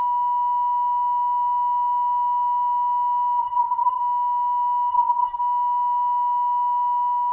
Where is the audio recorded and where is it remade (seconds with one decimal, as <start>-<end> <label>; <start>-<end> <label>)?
0.0-3.4 recorded; 3.4-4.0 remade; 4.0-4.9 recorded; 4.9-5.4 remade; 5.4-7.3 recorded